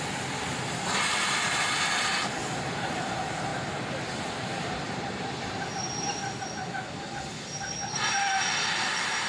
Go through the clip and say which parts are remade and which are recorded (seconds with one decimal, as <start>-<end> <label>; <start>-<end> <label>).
0.0-5.7 remade; 5.7-7.9 recorded; 7.9-9.3 remade